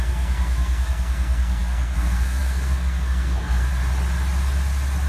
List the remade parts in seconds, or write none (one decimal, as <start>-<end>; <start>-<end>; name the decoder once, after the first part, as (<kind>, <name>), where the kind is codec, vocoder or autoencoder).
0.0-3.7 (codec, SNAC)